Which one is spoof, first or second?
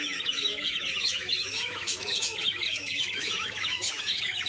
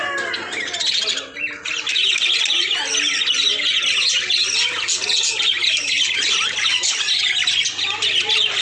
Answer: first